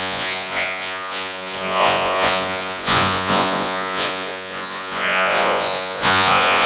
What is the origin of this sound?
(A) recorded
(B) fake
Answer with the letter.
B